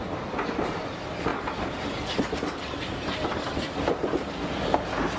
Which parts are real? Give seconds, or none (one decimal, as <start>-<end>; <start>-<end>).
0.0-5.2